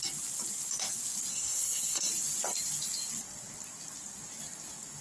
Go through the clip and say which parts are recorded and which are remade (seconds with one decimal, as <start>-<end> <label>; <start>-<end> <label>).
0.0-1.3 recorded; 1.3-2.1 remade; 2.1-5.0 recorded